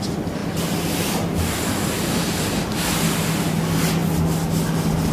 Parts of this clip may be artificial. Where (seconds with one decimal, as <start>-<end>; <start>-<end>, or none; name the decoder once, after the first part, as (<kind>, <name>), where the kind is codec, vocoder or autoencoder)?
0.4-3.5 (vocoder, BigVGAN v2); 4.0-5.1